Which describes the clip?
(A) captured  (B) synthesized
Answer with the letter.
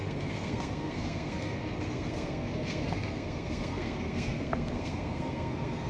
B